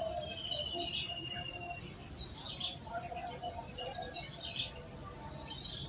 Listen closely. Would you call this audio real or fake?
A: fake